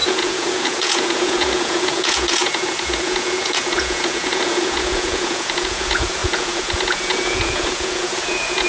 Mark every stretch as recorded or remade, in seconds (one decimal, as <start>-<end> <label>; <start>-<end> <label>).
0.0-8.7 remade

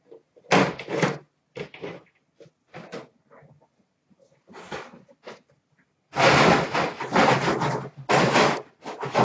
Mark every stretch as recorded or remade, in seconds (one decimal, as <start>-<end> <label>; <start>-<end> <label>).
0.0-9.2 recorded

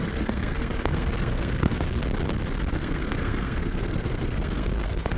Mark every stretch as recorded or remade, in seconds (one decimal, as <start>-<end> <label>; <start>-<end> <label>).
0.0-2.0 remade; 2.0-2.7 recorded; 2.7-5.2 remade

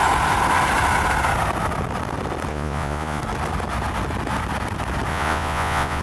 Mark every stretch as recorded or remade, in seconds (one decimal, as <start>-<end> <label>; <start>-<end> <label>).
0.0-2.5 recorded; 2.5-3.2 remade; 3.2-5.1 recorded; 5.1-6.0 remade

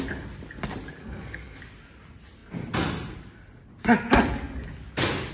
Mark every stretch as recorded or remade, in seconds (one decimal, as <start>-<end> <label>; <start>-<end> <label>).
0.0-1.0 recorded; 1.0-1.6 remade; 1.6-5.3 recorded

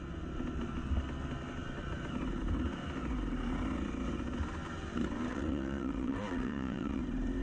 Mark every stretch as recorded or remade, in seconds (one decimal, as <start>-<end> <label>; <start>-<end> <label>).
0.0-5.3 recorded; 5.3-7.0 remade; 7.0-7.4 recorded

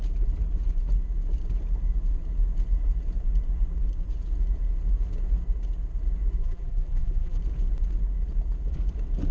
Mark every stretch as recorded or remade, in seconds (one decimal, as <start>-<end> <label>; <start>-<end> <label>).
0.0-6.4 recorded; 6.4-7.4 remade; 7.4-9.3 recorded